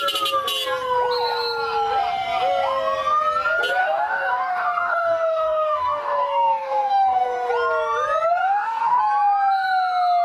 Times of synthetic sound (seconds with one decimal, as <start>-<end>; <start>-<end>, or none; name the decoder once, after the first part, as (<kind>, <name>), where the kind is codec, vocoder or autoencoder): 3.8-7.5 (codec, DAC); 8.4-9.0

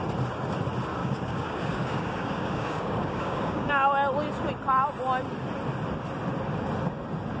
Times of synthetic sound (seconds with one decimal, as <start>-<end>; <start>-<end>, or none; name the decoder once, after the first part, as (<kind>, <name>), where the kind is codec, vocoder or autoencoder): 1.0-3.7 (codec, DAC)